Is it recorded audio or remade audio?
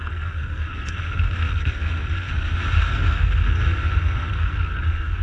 remade